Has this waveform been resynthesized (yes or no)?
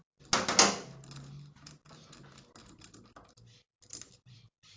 no